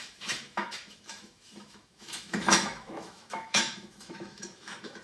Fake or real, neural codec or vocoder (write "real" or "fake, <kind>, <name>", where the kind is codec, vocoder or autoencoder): fake, autoencoder, DAC-VAE